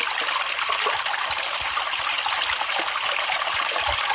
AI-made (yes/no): no